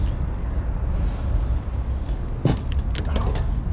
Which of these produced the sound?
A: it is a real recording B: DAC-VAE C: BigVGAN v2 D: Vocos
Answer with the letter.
A